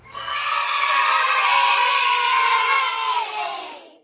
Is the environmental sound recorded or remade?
remade